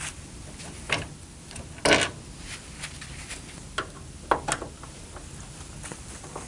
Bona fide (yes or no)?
yes